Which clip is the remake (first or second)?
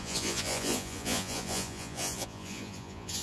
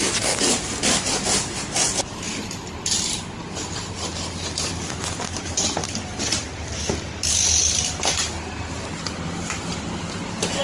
first